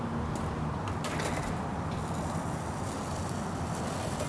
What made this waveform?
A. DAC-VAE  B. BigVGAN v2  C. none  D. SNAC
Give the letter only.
C